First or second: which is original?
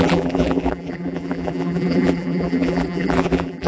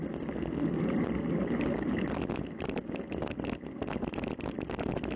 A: second